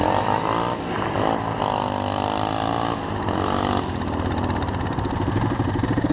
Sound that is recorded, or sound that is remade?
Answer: recorded